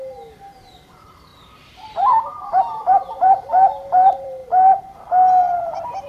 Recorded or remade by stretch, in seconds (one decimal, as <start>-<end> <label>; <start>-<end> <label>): 0.0-6.1 remade

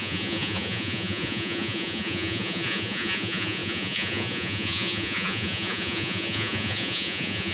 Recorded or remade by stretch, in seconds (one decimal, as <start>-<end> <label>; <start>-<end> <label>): 0.0-7.5 remade

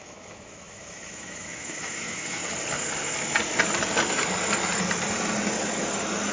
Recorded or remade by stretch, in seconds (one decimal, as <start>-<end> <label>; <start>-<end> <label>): 0.0-2.4 remade; 2.4-6.3 recorded

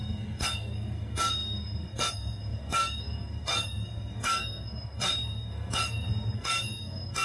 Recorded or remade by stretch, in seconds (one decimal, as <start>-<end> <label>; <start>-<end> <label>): 0.0-7.2 remade

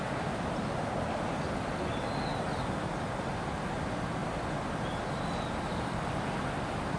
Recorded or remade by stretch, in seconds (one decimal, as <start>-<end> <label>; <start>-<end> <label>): 0.0-7.0 recorded

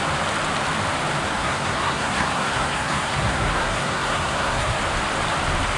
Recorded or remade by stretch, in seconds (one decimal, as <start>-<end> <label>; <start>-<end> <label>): 0.0-1.3 recorded; 1.3-4.8 remade; 4.8-5.8 recorded